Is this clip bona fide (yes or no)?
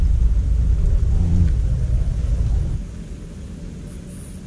yes